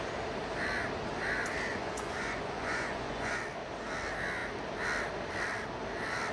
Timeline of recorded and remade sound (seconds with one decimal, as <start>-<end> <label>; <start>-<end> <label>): 0.0-1.7 recorded; 1.7-3.4 remade; 3.4-6.3 recorded